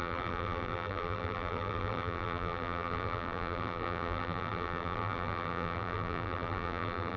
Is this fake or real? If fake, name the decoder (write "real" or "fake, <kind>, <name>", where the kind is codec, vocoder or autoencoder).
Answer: fake, vocoder, BigVGAN v2